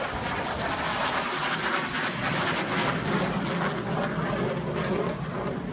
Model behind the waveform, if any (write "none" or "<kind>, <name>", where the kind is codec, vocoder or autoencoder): none